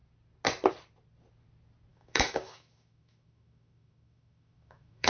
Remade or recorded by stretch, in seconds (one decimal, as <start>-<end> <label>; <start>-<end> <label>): 0.0-1.9 recorded; 1.9-5.1 remade